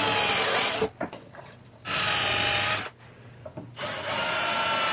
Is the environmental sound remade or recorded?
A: recorded